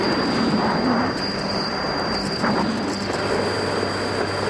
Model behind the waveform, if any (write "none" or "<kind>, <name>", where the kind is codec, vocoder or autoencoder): vocoder, BigVGAN v2